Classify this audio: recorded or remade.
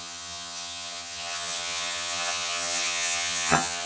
remade